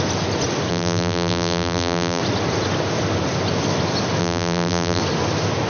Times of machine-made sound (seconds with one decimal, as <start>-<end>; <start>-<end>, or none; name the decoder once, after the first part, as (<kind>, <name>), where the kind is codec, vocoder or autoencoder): 0.7-2.2 (vocoder, BigVGAN v2); 4.2-5.0